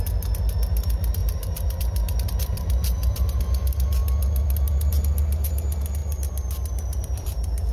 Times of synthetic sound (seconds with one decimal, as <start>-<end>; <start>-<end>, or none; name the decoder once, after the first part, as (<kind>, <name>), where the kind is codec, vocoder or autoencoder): 1.2-3.4 (vocoder, BigVGAN v2); 6.0-7.7